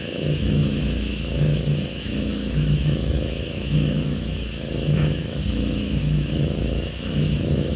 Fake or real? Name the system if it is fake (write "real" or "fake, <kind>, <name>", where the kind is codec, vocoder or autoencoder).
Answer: fake, autoencoder, DAC-VAE